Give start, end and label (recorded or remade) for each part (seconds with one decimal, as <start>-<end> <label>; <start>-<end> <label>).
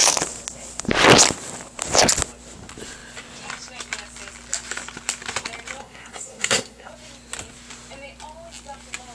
0.0-5.8 recorded; 5.8-6.9 remade; 6.9-9.1 recorded